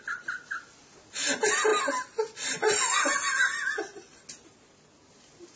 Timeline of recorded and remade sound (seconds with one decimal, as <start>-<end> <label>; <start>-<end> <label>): 0.0-5.6 recorded